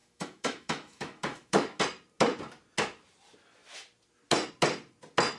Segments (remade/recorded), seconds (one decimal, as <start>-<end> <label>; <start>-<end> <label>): 0.0-1.8 remade; 1.8-5.4 recorded